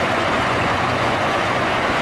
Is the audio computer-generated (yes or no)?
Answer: yes